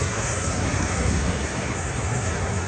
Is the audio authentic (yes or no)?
no